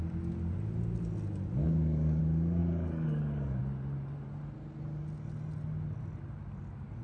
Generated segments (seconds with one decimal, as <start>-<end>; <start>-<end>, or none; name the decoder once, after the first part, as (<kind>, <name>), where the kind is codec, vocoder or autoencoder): 1.6-2.2 (codec, DAC); 2.6-3.6